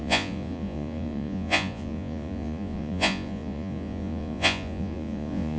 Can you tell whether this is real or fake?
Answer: fake